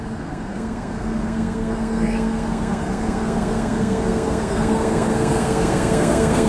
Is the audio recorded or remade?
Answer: remade